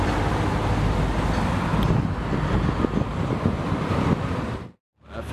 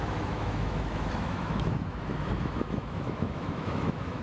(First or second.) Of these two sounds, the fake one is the second